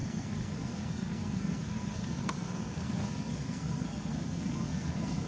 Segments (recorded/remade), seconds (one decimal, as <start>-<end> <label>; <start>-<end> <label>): 0.0-5.3 remade